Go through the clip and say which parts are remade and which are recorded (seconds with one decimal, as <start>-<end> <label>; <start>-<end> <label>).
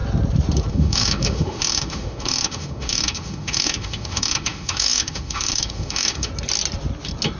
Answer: 0.0-0.7 recorded; 0.7-6.3 remade; 6.3-7.4 recorded